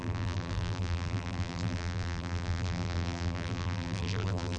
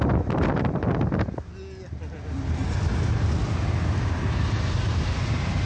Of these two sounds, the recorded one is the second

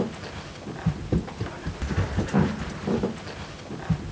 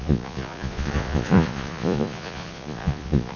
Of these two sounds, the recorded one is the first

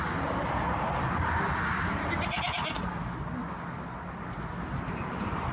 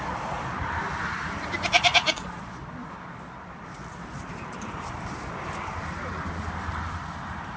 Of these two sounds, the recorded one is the first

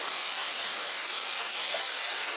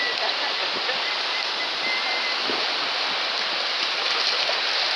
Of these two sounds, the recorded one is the second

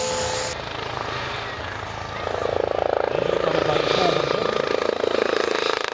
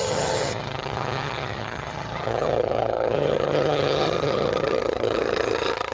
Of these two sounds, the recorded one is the first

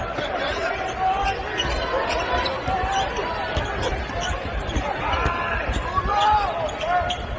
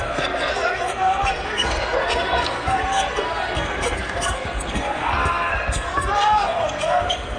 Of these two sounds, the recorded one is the first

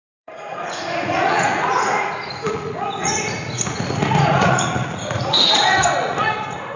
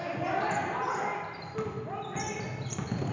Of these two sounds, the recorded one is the second